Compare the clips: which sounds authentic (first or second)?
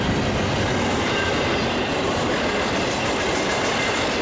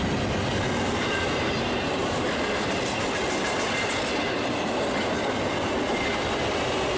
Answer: second